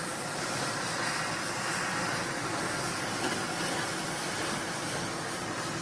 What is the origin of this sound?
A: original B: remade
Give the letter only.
A